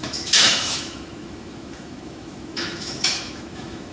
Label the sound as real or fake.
fake